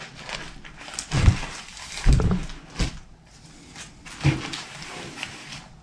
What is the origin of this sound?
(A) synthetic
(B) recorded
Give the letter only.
B